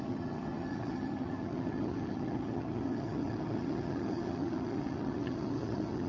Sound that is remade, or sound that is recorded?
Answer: remade